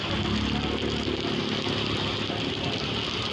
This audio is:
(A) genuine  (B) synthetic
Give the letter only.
A